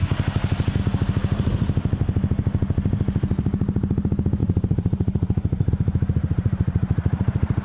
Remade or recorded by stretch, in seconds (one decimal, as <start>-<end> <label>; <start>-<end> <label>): 0.0-4.4 recorded; 4.4-5.7 remade; 5.7-6.2 recorded; 6.2-7.6 remade

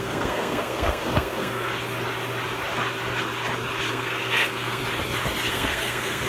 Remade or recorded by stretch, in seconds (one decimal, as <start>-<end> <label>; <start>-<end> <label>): 0.0-1.7 remade; 1.7-3.9 recorded; 3.9-4.8 remade; 4.8-5.5 recorded; 5.5-6.3 remade

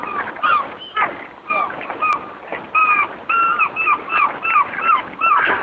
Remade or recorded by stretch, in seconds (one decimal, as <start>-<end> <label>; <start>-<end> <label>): 0.0-5.6 recorded

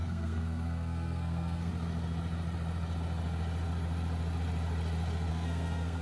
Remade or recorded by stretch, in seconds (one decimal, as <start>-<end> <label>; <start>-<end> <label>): 0.0-1.7 remade; 1.7-5.3 recorded; 5.3-6.0 remade